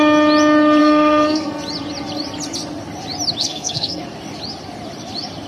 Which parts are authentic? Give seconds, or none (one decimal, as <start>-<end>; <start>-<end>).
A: 0.0-0.8; 1.5-3.4; 4.0-5.5